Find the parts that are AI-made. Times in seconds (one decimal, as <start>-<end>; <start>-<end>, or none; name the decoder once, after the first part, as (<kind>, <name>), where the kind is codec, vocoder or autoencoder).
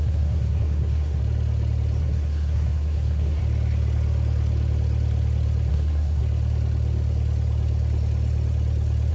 0.0-1.2 (codec, SNAC); 2.0-3.4; 5.7-6.2